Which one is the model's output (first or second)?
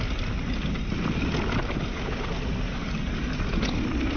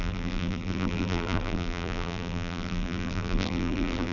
second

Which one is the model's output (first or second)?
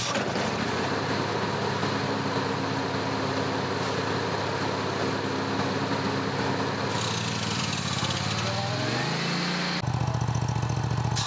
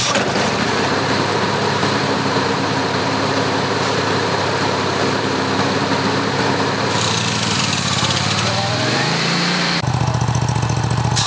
second